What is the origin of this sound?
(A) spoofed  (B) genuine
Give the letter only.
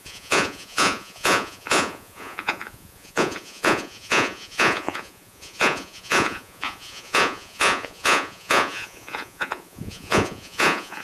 A